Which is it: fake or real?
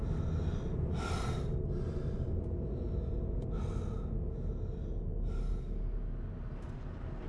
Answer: real